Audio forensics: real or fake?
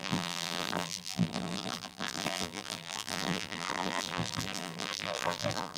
fake